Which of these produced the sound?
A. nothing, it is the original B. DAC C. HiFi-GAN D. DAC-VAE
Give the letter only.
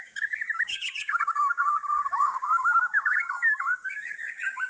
B